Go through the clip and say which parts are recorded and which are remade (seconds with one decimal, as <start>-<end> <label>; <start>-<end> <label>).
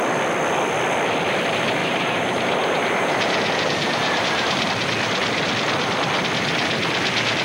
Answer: 0.0-1.8 recorded; 1.8-4.7 remade; 4.7-7.4 recorded